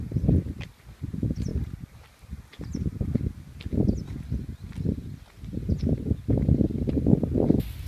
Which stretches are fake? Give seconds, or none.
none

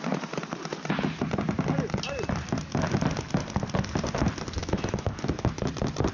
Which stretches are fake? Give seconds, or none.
4.6-5.5

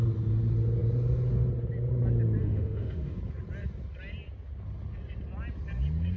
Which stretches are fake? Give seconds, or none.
2.4-3.2

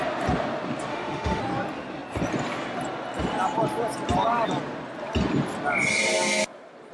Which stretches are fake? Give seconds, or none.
0.9-1.4

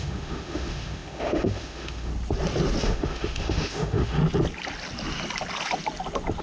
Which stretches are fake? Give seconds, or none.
0.0-2.1; 2.8-4.2

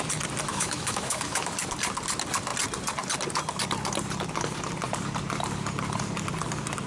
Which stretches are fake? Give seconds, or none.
0.5-1.5

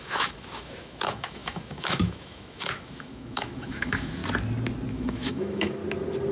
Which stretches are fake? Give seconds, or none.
0.0-4.2; 4.9-5.8

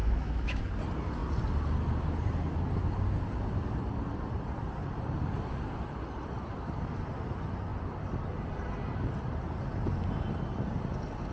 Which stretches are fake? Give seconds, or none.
0.0-0.6